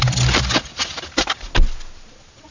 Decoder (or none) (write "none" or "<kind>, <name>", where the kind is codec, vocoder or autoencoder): none